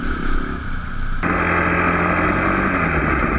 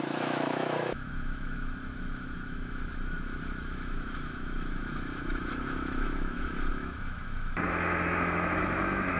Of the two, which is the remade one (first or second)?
second